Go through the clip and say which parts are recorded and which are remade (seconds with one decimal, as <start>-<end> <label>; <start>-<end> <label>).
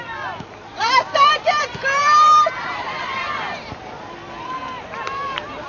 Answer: 0.0-5.7 remade